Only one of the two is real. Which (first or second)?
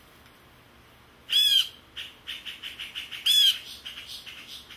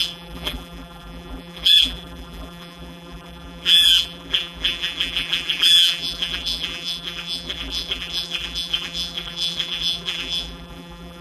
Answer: first